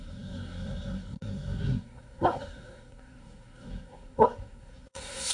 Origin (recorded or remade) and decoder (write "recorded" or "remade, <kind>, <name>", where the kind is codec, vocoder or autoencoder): remade, codec, SNAC